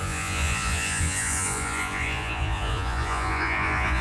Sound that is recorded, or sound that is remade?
remade